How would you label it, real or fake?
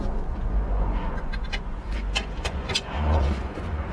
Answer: fake